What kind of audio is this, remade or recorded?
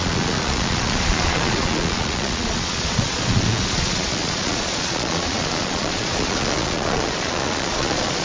remade